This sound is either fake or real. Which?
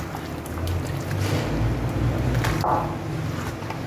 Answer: real